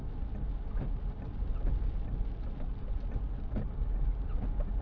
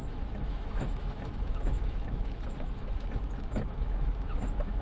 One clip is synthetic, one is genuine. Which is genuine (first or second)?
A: first